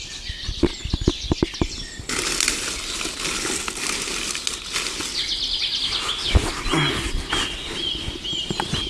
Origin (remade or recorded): recorded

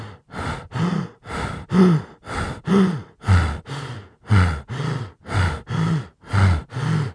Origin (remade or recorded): recorded